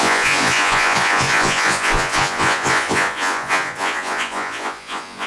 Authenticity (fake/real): fake